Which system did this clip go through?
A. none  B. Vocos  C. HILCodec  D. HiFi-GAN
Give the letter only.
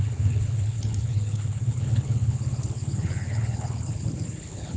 C